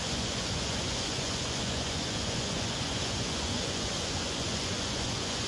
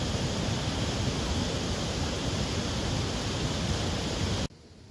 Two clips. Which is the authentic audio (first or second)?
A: second